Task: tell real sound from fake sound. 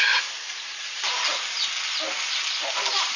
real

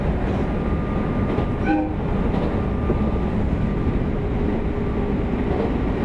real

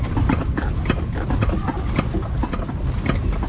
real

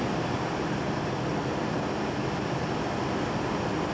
real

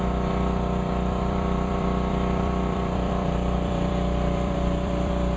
fake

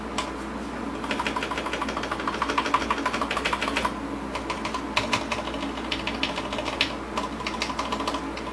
real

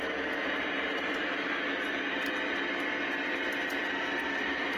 real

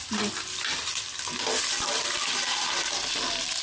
real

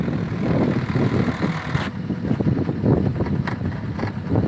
real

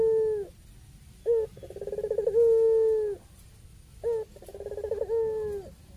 real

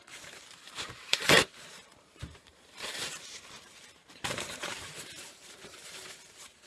fake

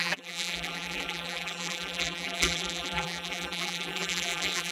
fake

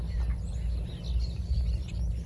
real